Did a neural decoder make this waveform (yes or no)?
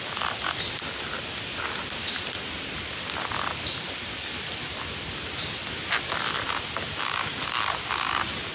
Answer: no